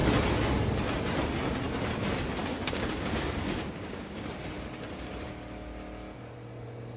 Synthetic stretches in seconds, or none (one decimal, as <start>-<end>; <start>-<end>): 2.5-4.2